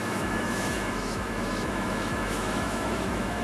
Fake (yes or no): yes